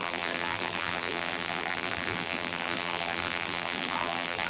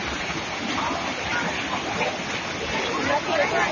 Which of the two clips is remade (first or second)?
first